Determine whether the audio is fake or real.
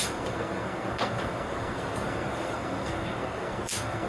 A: fake